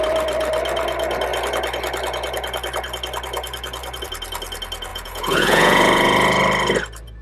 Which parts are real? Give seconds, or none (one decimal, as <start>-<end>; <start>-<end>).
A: 0.0-4.9; 6.4-7.2